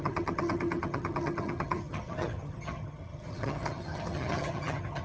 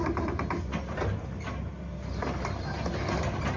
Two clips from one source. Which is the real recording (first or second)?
second